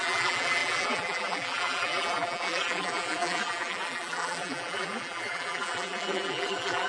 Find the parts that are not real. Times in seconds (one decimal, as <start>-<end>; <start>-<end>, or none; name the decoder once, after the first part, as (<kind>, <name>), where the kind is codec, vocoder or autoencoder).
0.0-6.9 (vocoder, BigVGAN v2)